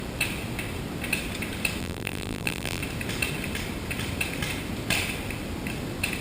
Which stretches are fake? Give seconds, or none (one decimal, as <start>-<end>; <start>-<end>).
1.8-2.8